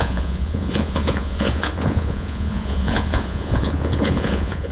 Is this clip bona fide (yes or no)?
no